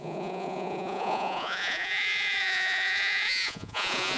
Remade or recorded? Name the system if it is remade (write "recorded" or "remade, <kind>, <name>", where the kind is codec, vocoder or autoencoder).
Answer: remade, vocoder, Vocos